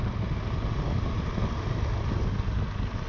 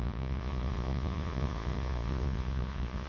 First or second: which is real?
first